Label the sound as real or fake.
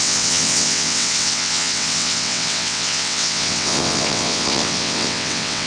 fake